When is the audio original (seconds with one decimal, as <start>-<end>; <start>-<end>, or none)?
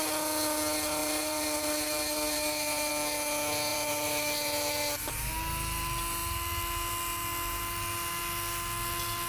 0.0-1.0; 2.9-3.7; 5.3-9.3